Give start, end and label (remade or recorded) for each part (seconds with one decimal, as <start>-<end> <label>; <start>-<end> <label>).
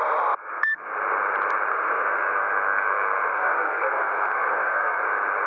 0.0-0.4 recorded; 0.4-0.9 remade; 0.9-1.7 recorded; 1.7-5.0 remade; 5.0-5.5 recorded